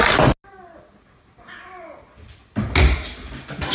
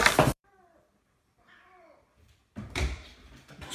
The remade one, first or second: second